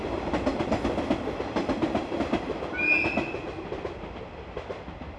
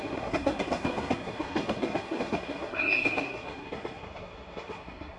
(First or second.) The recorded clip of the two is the first